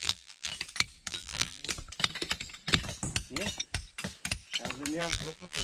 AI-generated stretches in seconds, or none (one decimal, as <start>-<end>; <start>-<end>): 0.0-0.5; 1.1-1.6; 5.0-5.6